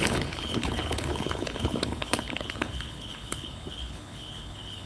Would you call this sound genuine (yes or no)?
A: no